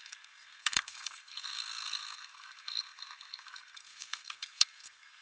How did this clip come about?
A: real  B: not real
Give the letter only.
B